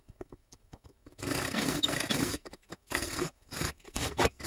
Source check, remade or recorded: remade